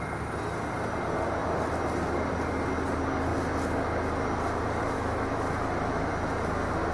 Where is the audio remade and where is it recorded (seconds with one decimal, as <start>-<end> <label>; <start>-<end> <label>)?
0.0-4.8 recorded; 4.8-6.1 remade; 6.1-6.9 recorded